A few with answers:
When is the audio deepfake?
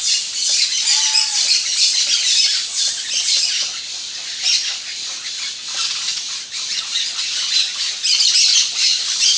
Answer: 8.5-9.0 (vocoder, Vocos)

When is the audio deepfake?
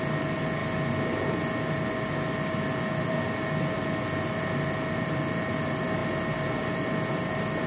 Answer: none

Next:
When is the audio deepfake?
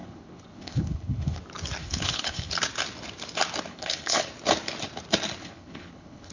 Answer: 0.0-1.4 (codec, HILCodec); 1.8-2.5; 3.7-4.3; 5.4-6.3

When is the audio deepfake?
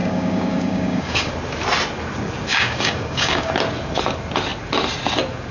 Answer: 0.0-1.3 (codec, DAC); 2.5-3.5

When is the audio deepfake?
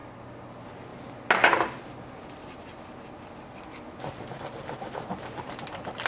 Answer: none